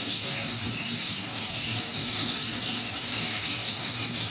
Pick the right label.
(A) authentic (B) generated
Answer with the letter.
B